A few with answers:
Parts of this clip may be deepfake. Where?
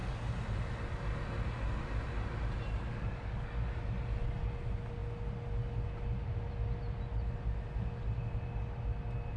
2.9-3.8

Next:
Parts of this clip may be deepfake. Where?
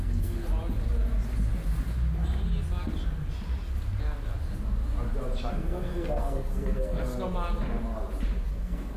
0.0-0.4; 5.5-7.1; 8.5-9.0